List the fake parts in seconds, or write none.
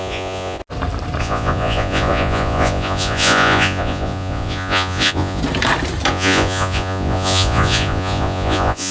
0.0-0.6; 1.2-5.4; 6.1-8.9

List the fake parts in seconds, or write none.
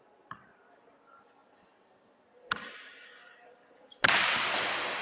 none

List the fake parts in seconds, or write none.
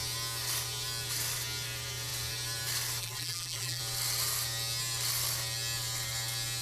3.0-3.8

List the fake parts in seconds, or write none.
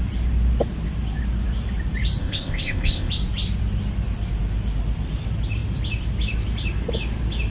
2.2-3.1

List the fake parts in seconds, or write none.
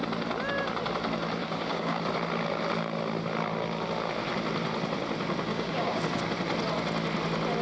1.4-2.0; 5.5-6.0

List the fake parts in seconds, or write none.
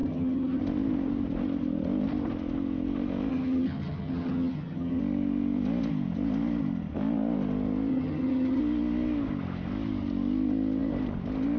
0.0-0.6; 3.3-5.0; 7.9-8.6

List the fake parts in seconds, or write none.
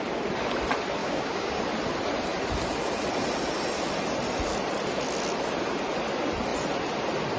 1.0-1.6